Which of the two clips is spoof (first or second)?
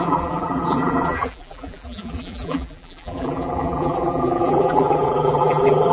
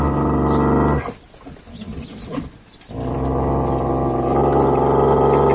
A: first